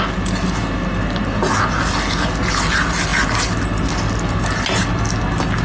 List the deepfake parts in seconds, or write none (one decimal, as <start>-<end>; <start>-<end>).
none